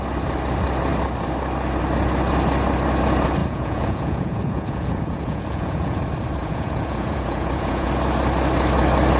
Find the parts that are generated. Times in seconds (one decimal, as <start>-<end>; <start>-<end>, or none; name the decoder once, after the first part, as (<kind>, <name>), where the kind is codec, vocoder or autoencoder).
3.4-6.0 (vocoder, Vocos); 6.4-7.9